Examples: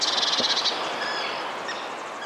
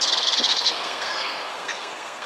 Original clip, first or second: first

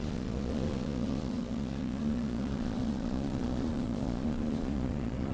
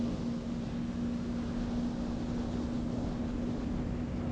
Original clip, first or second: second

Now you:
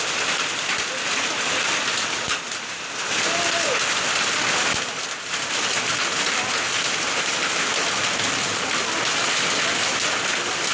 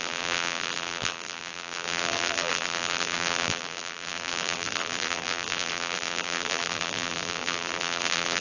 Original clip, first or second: first